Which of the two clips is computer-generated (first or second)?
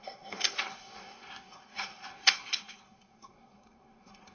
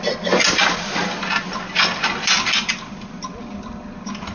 first